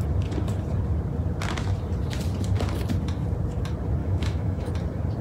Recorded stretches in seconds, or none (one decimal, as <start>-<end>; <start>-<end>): 0.0-4.0; 4.7-5.2